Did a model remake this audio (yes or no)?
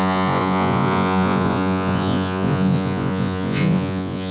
yes